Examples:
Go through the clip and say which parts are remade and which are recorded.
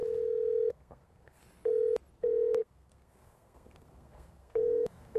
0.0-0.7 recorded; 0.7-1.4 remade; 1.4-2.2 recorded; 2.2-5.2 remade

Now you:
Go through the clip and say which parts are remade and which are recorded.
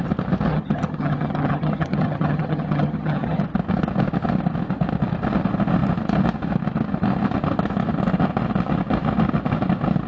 0.0-0.5 recorded; 0.5-3.4 remade; 3.4-10.1 recorded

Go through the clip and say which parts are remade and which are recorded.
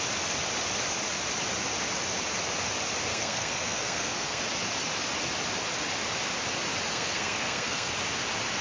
0.0-3.1 recorded; 3.1-4.4 remade; 4.4-6.9 recorded; 6.9-7.9 remade; 7.9-8.6 recorded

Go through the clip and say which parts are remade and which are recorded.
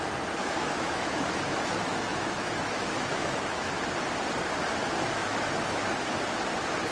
0.0-0.4 recorded; 0.4-3.8 remade; 3.8-4.8 recorded; 4.8-5.9 remade; 5.9-6.9 recorded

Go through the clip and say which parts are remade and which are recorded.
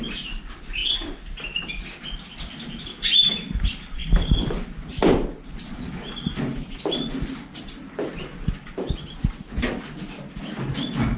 0.0-11.2 recorded